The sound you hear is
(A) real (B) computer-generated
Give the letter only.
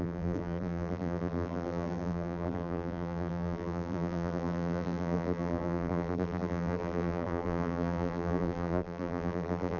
B